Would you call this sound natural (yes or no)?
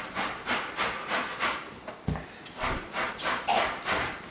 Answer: yes